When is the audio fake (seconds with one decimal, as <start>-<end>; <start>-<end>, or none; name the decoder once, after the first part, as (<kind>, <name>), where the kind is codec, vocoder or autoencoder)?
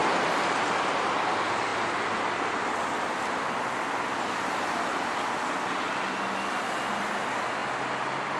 0.0-1.1 (vocoder, BigVGAN v2)